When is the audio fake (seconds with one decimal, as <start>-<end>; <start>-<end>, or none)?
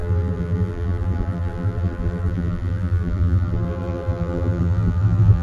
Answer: 0.0-5.4